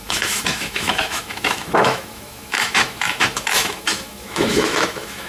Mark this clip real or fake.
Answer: fake